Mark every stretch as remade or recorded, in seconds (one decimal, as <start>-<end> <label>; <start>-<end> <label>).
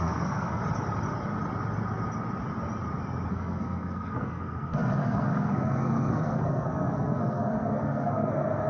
0.0-0.6 remade; 0.6-3.3 recorded; 3.3-8.7 remade